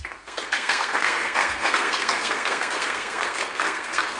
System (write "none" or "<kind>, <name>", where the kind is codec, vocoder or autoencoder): codec, SNAC